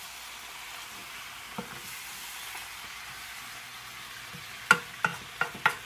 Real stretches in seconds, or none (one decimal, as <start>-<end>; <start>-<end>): 0.0-3.7; 4.3-5.1